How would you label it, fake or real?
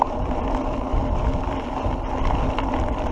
real